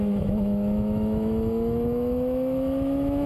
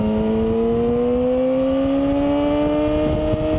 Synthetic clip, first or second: first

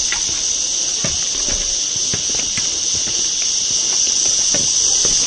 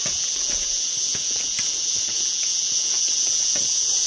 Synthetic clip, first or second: second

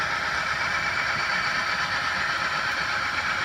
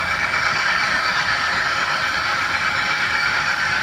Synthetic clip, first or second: second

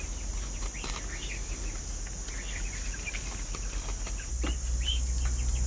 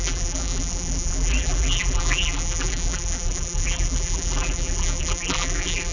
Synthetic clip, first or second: second